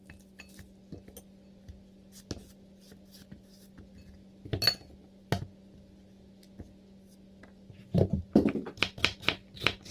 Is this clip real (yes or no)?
yes